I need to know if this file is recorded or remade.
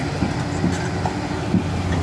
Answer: recorded